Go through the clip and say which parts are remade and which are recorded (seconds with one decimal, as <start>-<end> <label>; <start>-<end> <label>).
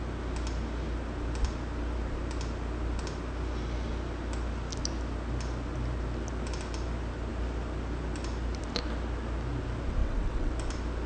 0.0-10.0 recorded; 10.0-10.5 remade; 10.5-11.1 recorded